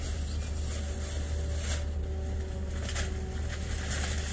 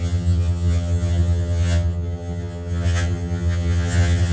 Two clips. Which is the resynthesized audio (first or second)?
second